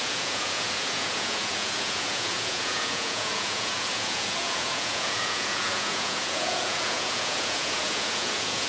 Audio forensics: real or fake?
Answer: fake